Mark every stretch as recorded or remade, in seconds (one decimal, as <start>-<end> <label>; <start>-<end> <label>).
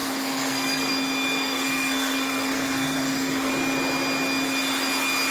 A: 0.0-0.9 remade; 0.9-1.4 recorded; 1.4-3.5 remade; 3.5-5.3 recorded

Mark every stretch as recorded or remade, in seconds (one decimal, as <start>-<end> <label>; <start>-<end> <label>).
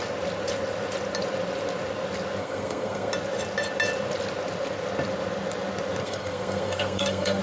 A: 0.0-2.4 recorded; 2.4-3.1 remade; 3.1-6.0 recorded; 6.0-7.4 remade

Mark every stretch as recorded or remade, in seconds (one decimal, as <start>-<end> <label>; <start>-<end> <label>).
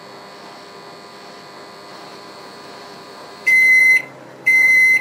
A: 0.0-1.9 recorded; 1.9-5.0 remade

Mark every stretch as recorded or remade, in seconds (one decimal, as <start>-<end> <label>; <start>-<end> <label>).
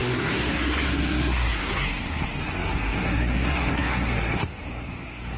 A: 0.0-5.4 remade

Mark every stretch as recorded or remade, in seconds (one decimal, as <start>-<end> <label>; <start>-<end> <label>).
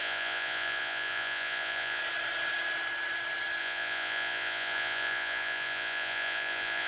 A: 0.0-2.0 remade; 2.0-3.6 recorded; 3.6-6.9 remade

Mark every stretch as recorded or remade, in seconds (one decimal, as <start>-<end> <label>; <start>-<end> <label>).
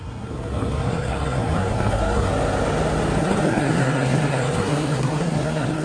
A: 0.0-2.3 remade; 2.3-3.2 recorded; 3.2-5.8 remade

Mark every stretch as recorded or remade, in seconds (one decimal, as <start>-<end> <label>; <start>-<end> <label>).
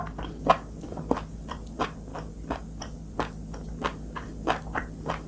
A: 0.0-5.3 recorded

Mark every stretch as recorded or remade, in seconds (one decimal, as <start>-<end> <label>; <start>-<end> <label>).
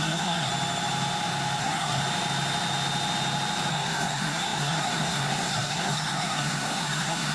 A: 0.0-0.5 remade; 0.5-1.6 recorded; 1.6-2.0 remade; 2.0-3.7 recorded; 3.7-7.3 remade